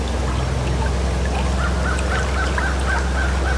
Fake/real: real